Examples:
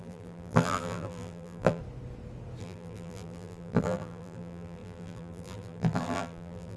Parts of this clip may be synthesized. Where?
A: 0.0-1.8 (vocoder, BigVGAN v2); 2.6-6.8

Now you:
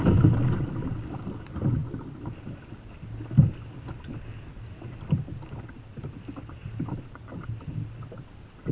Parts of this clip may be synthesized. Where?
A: 6.6-7.5 (vocoder, BigVGAN v2)

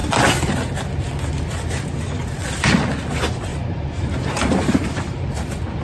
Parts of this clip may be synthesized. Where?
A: 3.5-5.3 (vocoder, BigVGAN v2)

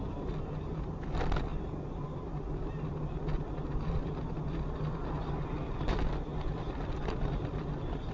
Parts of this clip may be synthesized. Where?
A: 1.5-4.5 (vocoder, BigVGAN v2); 6.3-8.1